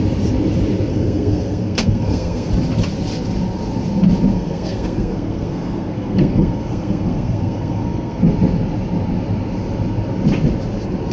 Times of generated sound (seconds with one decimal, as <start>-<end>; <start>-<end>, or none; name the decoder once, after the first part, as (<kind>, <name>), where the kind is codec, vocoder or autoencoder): 0.9-2.5 (codec, SNAC); 4.3-8.2